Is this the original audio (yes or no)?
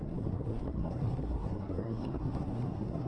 no